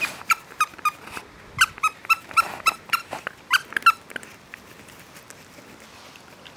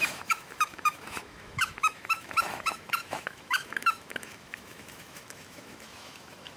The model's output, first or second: second